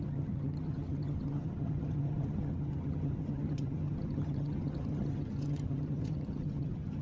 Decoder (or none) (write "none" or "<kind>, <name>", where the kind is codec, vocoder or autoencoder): vocoder, HiFi-GAN